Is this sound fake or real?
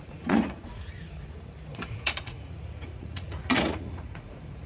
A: fake